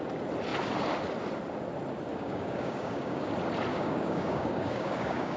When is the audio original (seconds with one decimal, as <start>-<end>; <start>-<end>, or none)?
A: 0.0-2.1; 3.3-3.7